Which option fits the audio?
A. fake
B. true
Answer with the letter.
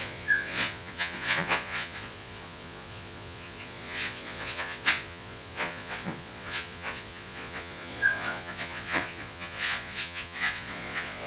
A